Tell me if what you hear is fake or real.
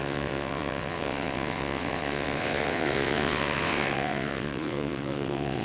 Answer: fake